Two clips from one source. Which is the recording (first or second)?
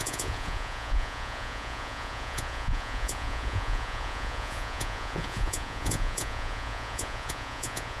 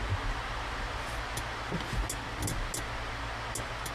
second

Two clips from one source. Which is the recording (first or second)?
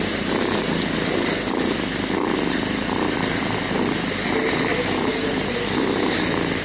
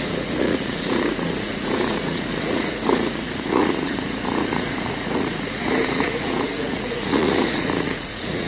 first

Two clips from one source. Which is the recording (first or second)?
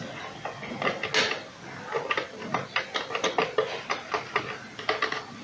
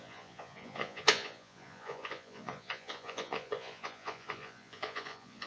first